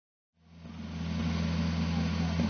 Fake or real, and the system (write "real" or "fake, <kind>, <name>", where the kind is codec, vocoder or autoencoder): real